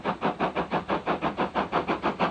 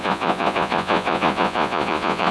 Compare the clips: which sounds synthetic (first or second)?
second